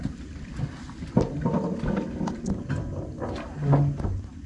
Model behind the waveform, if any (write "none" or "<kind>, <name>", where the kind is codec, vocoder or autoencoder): none